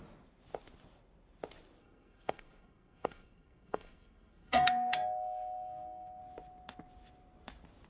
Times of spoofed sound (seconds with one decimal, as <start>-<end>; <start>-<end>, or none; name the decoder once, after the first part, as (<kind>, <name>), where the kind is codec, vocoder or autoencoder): 1.8-6.2 (codec, SNAC)